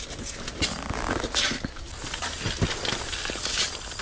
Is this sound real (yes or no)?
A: yes